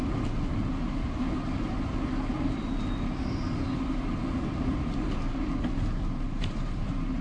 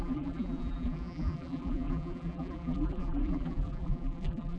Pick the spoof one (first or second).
second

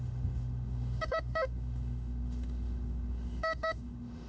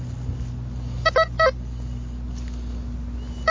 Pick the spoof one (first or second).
first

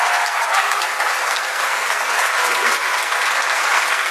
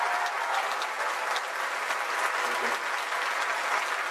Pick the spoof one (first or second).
first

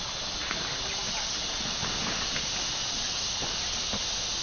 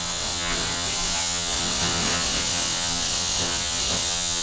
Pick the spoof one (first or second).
second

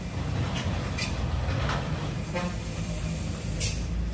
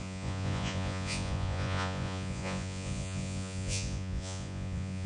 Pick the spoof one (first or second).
second